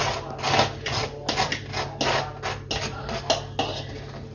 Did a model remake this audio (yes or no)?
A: no